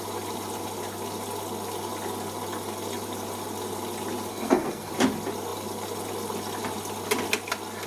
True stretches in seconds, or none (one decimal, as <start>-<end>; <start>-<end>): 0.0-4.3; 4.9-7.9

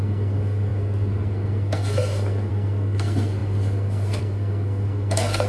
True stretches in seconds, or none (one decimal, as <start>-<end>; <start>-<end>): none